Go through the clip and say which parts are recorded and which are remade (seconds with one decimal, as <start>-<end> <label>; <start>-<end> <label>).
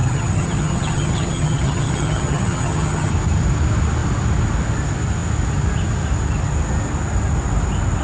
0.0-3.1 remade; 3.1-8.0 recorded